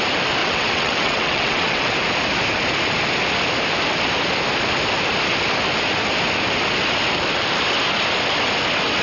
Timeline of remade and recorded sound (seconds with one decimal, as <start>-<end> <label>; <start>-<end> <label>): 0.0-0.4 recorded; 0.4-1.9 remade; 1.9-9.0 recorded